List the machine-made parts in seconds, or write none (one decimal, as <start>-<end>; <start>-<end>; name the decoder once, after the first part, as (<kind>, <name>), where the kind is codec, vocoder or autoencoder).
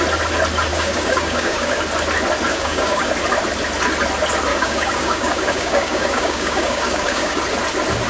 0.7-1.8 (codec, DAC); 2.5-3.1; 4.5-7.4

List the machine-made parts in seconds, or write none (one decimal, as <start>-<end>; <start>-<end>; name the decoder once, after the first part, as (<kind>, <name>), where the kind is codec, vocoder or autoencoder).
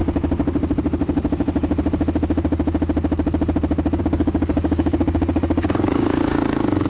4.0-6.9 (codec, DAC)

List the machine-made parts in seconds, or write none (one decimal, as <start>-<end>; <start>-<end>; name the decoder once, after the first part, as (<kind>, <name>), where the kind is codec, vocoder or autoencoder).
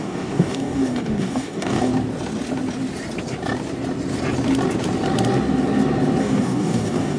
0.0-1.9 (codec, DAC); 6.2-7.2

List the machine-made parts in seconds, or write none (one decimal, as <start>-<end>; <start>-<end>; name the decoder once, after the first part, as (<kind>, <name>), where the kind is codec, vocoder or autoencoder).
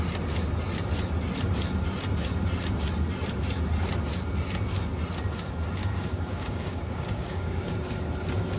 5.8-7.7 (codec, DAC)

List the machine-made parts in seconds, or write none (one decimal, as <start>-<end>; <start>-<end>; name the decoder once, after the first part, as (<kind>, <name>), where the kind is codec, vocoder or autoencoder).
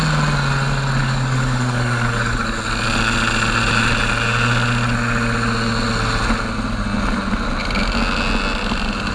1.0-2.6 (codec, DAC)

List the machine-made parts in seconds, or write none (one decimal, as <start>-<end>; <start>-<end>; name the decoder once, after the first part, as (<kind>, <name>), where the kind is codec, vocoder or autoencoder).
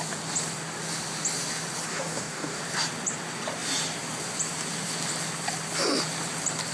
1.9-2.6 (codec, DAC)